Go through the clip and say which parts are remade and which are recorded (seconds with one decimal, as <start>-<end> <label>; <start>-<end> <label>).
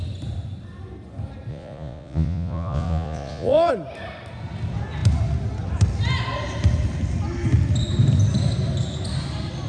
0.0-1.5 recorded; 1.5-3.7 remade; 3.7-9.7 recorded